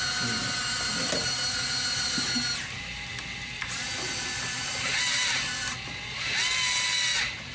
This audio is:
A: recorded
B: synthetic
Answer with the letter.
A